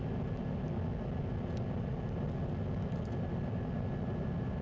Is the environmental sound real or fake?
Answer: real